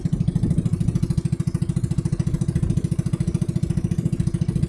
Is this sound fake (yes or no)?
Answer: no